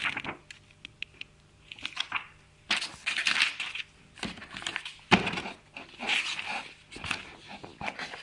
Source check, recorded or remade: recorded